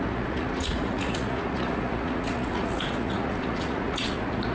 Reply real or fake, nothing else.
fake